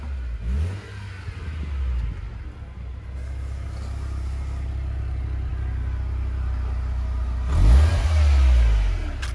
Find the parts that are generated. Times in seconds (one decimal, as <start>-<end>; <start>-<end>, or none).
none